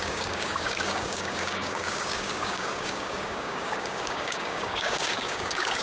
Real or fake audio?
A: fake